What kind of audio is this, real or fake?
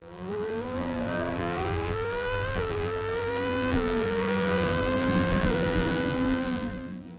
fake